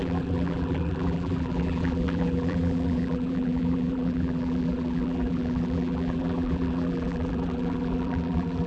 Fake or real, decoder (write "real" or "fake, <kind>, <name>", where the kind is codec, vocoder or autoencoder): fake, vocoder, BigVGAN v2